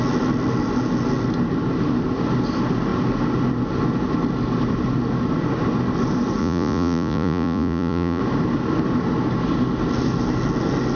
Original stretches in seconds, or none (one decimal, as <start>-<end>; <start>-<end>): 0.0-6.4; 8.2-10.9

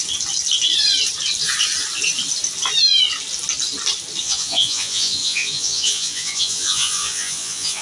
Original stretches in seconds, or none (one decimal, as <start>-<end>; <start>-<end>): 0.0-4.2

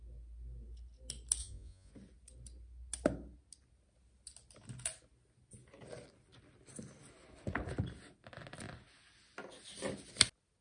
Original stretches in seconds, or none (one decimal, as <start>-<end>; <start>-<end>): 0.0-1.4; 1.9-10.6

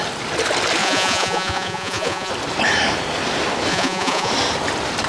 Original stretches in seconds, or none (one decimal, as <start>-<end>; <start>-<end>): 0.0-0.8; 2.3-3.7; 4.3-5.1

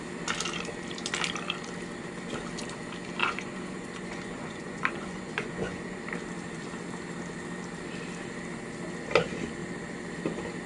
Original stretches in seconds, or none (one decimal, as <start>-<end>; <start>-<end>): 0.0-3.2; 6.0-10.7